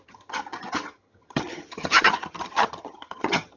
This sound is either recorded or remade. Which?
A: remade